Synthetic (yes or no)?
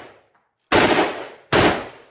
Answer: no